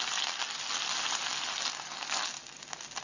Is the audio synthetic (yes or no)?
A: no